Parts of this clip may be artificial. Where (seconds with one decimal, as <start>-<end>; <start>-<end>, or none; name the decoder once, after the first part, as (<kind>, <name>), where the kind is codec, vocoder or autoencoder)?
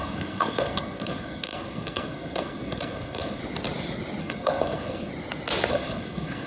0.0-3.4 (codec, SNAC); 4.2-5.1; 5.7-6.5